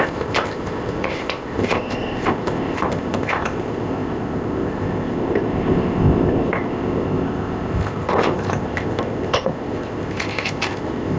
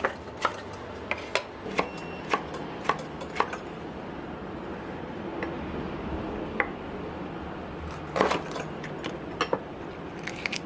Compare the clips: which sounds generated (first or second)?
first